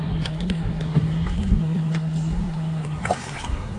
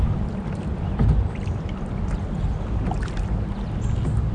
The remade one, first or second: first